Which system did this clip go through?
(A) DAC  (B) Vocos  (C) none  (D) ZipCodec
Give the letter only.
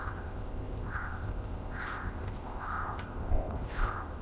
D